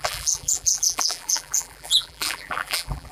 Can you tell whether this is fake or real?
fake